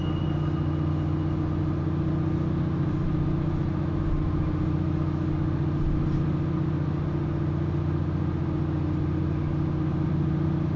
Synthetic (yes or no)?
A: no